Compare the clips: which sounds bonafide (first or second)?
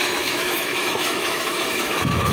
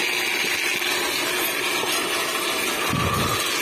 second